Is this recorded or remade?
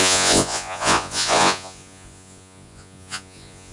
remade